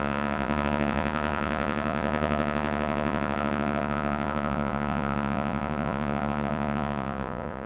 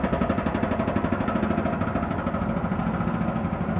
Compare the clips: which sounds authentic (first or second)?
second